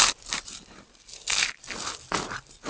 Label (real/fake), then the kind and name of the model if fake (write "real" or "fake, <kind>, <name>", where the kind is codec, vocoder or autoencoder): real